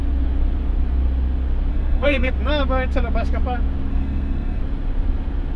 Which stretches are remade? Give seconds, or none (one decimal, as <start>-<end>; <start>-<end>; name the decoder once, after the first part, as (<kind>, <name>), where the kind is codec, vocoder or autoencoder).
1.7-2.3 (codec, SNAC); 3.9-4.6